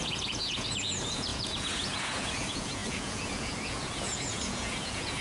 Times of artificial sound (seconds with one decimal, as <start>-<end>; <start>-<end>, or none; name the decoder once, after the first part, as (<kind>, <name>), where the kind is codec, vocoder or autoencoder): 0.0-5.2 (vocoder, Vocos)